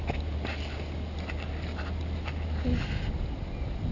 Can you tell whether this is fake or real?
real